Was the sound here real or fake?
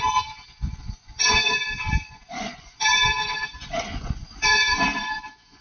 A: fake